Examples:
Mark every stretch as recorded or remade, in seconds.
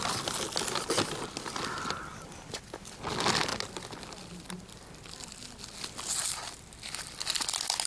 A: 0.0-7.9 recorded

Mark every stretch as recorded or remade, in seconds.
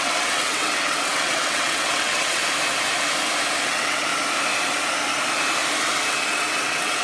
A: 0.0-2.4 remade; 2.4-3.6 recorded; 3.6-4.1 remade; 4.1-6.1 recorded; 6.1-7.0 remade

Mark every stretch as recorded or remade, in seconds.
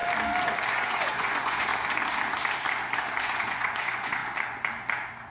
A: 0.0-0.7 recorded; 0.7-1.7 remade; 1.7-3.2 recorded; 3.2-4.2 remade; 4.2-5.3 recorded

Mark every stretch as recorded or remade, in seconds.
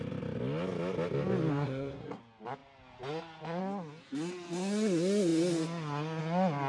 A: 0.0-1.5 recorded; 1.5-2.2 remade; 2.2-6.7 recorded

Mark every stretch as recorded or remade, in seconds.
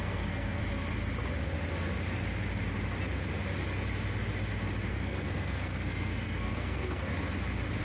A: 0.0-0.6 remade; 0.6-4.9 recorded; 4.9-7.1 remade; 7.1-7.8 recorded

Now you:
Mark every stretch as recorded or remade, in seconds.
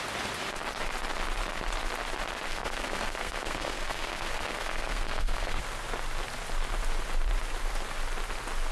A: 0.0-2.5 recorded; 2.5-5.6 remade; 5.6-8.7 recorded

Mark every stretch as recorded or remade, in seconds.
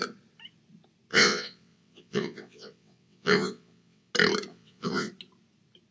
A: 0.0-1.1 recorded; 1.1-4.1 remade; 4.1-4.5 recorded; 4.5-5.1 remade; 5.1-5.9 recorded